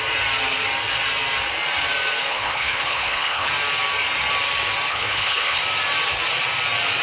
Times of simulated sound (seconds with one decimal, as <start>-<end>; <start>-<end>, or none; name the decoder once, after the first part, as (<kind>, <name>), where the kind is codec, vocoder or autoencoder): 2.3-3.5 (codec, HILCodec); 4.9-5.6